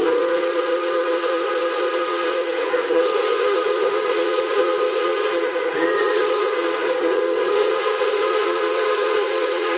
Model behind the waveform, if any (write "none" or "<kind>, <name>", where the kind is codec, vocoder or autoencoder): vocoder, Vocos